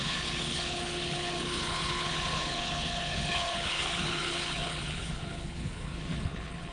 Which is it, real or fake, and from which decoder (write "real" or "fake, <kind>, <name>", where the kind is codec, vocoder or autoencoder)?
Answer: fake, codec, HILCodec